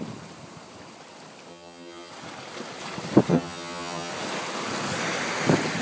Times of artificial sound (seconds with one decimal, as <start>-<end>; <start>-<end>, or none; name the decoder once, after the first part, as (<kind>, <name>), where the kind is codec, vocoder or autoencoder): 1.5-2.1 (vocoder, HiFi-GAN); 3.3-4.1